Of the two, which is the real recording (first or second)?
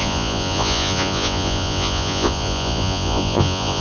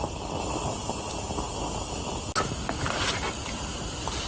second